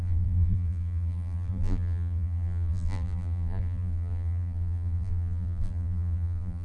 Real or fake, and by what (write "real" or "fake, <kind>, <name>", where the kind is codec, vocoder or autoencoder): fake, vocoder, BigVGAN v2